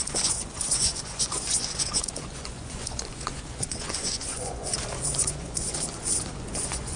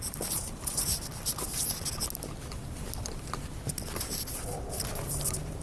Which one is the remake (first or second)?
first